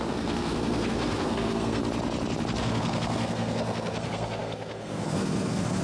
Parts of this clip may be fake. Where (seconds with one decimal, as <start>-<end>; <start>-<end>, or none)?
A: 0.0-1.8; 2.6-5.8